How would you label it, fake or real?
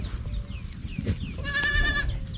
real